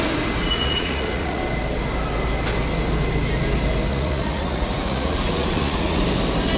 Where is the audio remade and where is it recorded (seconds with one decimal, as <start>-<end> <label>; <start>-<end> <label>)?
0.0-0.4 recorded; 0.4-1.4 remade; 1.4-3.9 recorded; 3.9-6.0 remade; 6.0-6.6 recorded